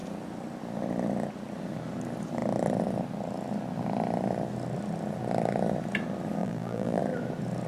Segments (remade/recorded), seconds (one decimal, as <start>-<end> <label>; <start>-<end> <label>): 0.0-6.4 recorded; 6.4-7.0 remade; 7.0-7.7 recorded